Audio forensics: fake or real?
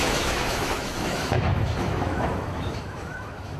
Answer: fake